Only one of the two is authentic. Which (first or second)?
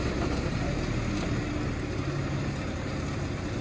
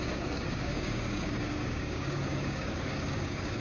first